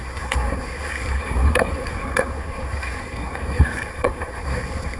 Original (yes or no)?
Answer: no